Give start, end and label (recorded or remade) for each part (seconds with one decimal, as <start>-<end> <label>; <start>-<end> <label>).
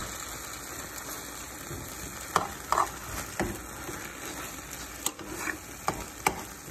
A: 0.0-6.7 recorded